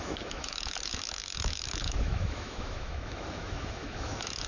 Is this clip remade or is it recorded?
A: remade